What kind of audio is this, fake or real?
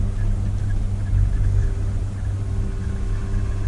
real